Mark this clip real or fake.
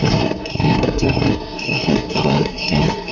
fake